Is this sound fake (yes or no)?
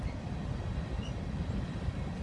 no